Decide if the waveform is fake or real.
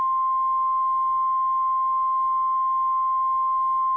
real